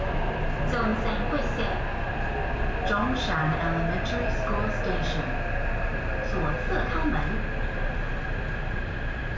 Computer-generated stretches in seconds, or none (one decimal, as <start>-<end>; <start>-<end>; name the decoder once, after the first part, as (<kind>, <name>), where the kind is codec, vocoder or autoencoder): none